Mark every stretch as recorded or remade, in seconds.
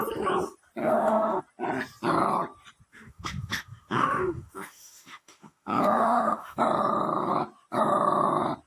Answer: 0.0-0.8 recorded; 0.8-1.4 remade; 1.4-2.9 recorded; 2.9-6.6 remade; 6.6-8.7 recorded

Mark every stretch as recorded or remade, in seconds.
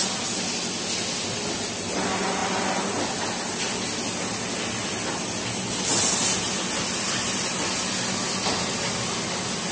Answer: 0.0-9.7 recorded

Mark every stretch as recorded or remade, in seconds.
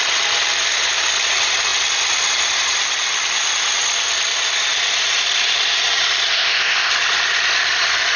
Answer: 0.0-6.3 recorded; 6.3-6.9 remade; 6.9-8.2 recorded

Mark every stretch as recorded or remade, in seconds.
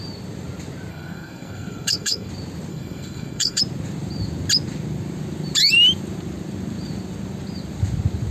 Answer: 0.0-0.9 recorded; 0.9-2.3 remade; 2.3-2.7 recorded; 2.7-3.6 remade; 3.6-8.3 recorded